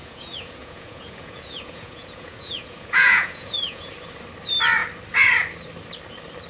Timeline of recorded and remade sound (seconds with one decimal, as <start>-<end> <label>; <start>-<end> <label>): 0.0-3.9 remade; 3.9-6.5 recorded